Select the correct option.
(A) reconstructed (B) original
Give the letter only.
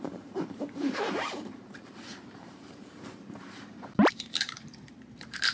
A